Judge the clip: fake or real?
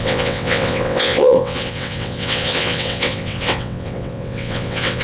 fake